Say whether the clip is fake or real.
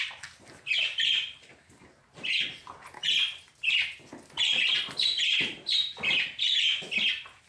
real